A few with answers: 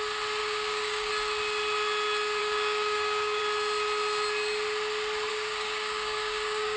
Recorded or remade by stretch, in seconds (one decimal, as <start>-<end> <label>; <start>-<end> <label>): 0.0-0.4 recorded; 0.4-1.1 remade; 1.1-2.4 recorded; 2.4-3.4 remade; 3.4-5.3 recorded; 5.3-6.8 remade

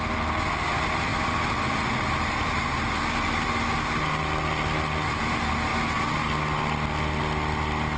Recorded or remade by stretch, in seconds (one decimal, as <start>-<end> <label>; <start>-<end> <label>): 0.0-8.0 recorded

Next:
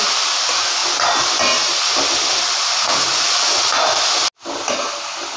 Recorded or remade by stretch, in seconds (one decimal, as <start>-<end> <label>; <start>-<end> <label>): 0.0-5.4 recorded

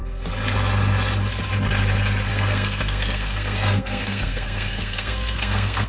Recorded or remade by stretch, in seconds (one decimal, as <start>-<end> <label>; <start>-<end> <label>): 0.0-2.3 recorded; 2.3-5.9 remade

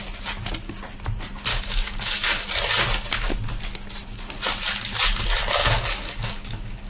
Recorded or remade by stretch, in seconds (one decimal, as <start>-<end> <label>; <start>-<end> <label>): 0.0-1.5 recorded; 1.5-2.4 remade; 2.4-5.6 recorded; 5.6-6.9 remade